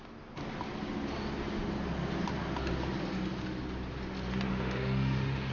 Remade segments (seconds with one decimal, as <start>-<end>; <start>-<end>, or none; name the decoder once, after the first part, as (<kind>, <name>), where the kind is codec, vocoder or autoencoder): 4.5-5.5 (autoencoder, DAC-VAE)